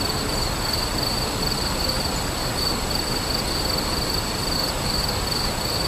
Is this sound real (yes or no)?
yes